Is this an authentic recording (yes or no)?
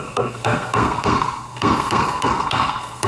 no